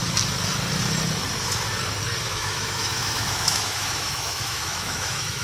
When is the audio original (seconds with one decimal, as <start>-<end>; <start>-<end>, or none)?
0.0-2.2